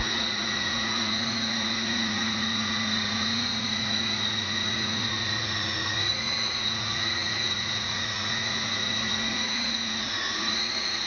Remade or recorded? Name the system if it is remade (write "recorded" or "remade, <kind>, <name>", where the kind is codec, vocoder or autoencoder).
remade, vocoder, Vocos